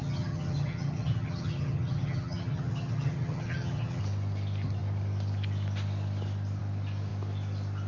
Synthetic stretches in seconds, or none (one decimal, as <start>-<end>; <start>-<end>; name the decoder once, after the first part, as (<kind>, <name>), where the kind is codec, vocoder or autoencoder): 0.0-4.0 (vocoder, HiFi-GAN)